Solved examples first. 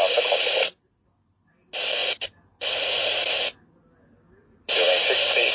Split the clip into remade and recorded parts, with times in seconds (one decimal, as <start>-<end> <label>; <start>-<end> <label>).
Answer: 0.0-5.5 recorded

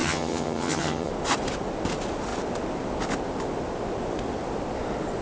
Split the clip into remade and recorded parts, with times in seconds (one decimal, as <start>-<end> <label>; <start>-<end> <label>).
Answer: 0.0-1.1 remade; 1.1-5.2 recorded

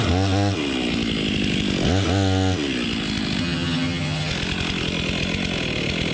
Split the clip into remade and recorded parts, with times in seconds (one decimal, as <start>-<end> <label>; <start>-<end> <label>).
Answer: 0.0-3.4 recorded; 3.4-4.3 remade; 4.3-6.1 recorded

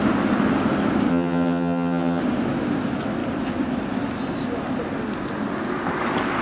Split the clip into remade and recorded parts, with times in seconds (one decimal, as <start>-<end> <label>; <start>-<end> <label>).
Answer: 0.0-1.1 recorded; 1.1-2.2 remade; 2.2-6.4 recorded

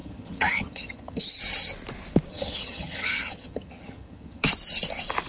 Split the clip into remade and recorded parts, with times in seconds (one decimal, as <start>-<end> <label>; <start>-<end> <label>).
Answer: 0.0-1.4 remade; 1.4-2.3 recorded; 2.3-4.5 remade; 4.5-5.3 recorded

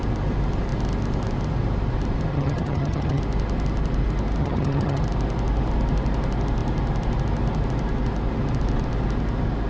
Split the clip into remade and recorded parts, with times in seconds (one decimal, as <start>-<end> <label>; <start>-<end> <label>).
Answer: 0.0-2.3 recorded; 2.3-3.2 remade; 3.2-4.4 recorded; 4.4-5.0 remade; 5.0-9.7 recorded